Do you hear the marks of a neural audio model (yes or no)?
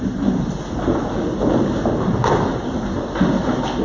no